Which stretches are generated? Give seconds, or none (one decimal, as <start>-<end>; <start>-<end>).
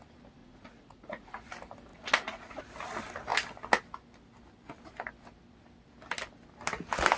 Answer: 0.4-1.4; 1.9-2.6